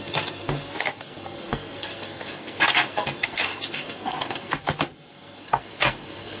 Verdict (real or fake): fake